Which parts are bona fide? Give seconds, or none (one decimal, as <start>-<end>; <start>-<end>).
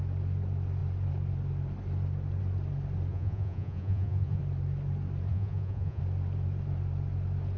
0.0-3.1; 4.4-5.3; 6.0-7.6